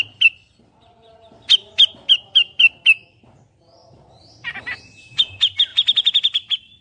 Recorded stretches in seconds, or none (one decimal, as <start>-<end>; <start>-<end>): 0.0-3.8; 4.8-5.7